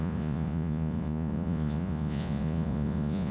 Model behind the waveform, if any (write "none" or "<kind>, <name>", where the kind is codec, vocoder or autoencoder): vocoder, Vocos